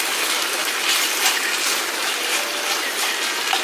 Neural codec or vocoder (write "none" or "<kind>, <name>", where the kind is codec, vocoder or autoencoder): none